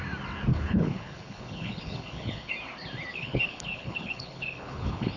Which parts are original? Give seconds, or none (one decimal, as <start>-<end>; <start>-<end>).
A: 0.0-0.5; 2.5-3.1